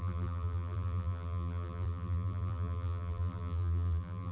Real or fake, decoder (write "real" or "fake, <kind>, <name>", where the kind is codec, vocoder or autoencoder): fake, vocoder, BigVGAN v2